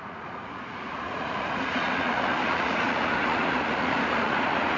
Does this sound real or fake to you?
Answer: fake